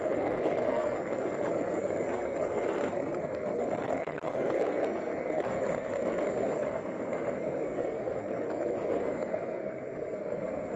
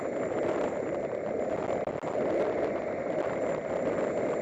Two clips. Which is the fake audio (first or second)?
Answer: first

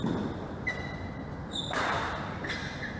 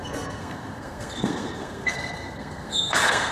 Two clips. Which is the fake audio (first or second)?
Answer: second